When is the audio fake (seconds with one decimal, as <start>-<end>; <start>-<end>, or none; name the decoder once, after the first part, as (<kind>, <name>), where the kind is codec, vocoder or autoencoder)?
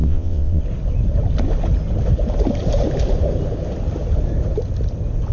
0.0-0.6 (vocoder, WaveNeXt)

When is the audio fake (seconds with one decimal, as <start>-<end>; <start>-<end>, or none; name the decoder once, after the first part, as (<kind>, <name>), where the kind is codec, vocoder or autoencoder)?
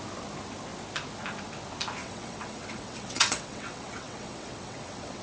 2.0-5.2 (vocoder, WaveNeXt)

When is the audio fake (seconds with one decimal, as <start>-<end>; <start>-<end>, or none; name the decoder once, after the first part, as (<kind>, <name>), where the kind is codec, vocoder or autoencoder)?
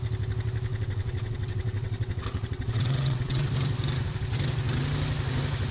0.7-3.5 (vocoder, WaveNeXt)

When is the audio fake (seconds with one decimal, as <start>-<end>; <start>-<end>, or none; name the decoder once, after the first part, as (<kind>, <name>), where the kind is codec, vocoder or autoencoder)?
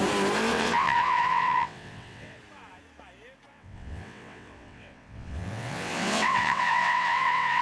0.5-2.4 (vocoder, WaveNeXt); 3.5-7.6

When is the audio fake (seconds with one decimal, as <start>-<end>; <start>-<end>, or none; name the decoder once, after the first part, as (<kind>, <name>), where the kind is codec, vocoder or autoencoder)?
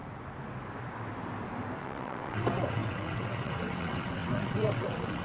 1.8-5.2 (vocoder, WaveNeXt)